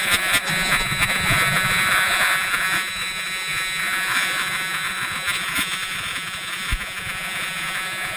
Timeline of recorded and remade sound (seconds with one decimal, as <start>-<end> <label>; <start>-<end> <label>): 0.0-8.2 remade